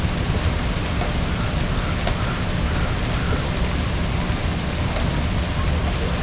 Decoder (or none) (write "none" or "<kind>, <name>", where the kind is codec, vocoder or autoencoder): none